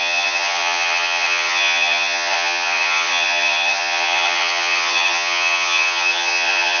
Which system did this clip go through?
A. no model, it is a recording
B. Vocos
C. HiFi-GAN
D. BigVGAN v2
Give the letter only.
C